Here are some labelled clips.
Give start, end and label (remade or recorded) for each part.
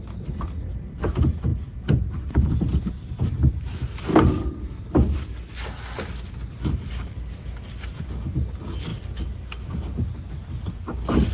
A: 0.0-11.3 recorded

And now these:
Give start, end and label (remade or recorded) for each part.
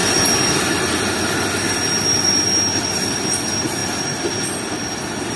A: 0.0-5.4 recorded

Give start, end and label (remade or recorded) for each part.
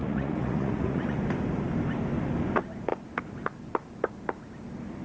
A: 0.0-1.2 remade; 1.2-5.0 recorded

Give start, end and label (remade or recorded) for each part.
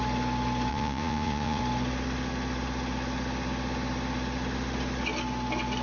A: 0.0-0.7 recorded; 0.7-1.6 remade; 1.6-5.8 recorded